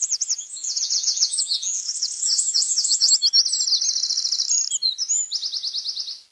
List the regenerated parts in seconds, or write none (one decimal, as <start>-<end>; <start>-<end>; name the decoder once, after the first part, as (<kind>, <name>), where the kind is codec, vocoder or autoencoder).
0.0-3.1 (vocoder, Vocos)